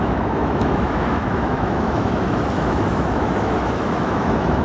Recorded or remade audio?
remade